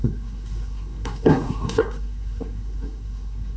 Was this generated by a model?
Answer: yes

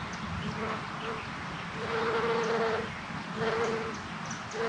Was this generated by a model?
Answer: no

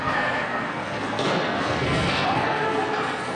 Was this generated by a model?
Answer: yes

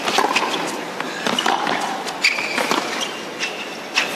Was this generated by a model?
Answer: no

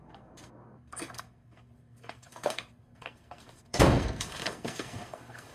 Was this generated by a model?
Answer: yes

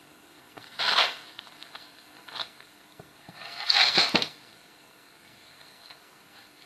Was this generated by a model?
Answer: yes